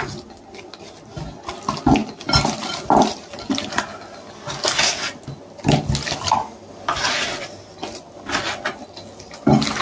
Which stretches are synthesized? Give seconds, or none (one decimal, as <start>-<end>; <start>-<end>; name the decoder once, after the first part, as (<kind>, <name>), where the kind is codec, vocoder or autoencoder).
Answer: 2.0-3.5 (vocoder, BigVGAN v2)